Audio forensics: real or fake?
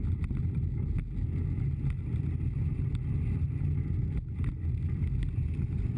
real